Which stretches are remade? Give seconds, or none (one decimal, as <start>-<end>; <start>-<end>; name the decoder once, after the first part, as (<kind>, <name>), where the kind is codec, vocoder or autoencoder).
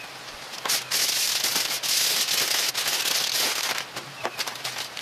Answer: none